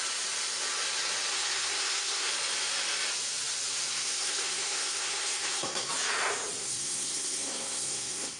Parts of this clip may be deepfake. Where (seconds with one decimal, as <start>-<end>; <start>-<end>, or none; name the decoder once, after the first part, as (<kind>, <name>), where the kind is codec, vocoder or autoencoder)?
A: 1.3-2.3 (codec, SNAC); 3.9-5.9; 6.6-8.4